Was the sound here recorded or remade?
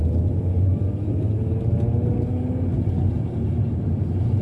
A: recorded